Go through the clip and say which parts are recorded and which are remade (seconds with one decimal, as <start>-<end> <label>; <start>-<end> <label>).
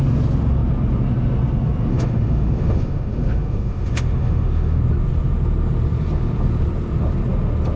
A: 0.0-1.9 recorded; 1.9-4.8 remade; 4.8-7.8 recorded